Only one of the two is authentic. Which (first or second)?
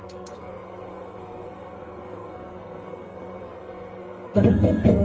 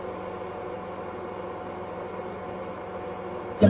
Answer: second